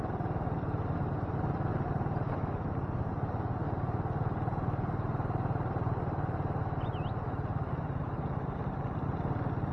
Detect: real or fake real